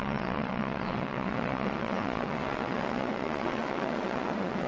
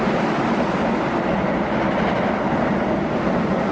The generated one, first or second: first